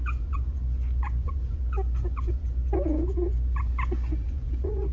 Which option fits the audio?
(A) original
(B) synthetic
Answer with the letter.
B